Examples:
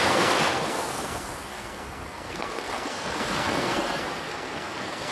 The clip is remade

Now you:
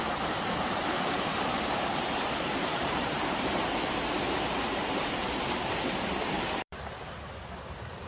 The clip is remade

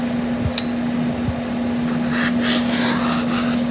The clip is recorded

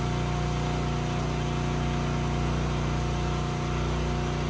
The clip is recorded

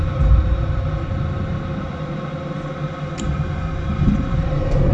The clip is remade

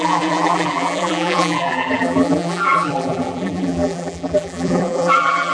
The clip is remade